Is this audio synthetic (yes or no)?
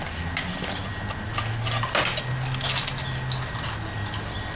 no